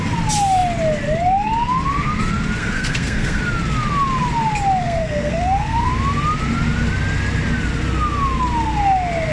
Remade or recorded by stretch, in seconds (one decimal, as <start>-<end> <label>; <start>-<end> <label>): 0.0-2.6 recorded; 2.6-3.4 remade; 3.4-4.8 recorded; 4.8-5.9 remade; 5.9-9.3 recorded